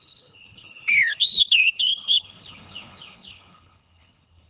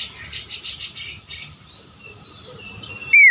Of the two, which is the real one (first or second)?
second